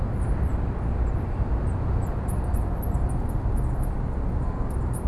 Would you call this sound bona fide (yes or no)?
yes